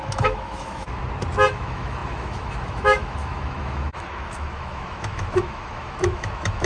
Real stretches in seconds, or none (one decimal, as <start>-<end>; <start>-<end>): 1.0-1.5